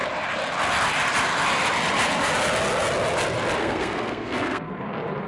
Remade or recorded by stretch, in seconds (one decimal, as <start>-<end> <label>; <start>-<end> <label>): 0.0-3.6 recorded; 3.6-4.7 remade; 4.7-5.3 recorded